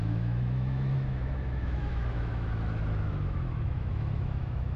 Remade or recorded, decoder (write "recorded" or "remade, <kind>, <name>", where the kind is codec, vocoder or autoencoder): remade, autoencoder, DAC-VAE